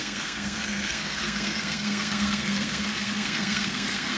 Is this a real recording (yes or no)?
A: no